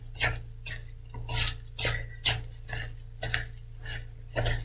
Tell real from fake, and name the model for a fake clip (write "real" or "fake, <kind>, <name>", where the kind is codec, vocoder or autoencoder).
real